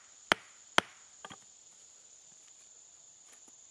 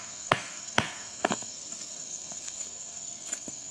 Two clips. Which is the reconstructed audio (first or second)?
second